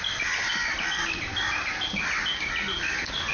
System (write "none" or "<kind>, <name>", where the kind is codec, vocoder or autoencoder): none